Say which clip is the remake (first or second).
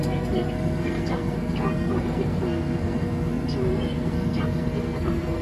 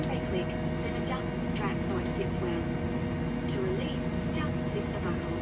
first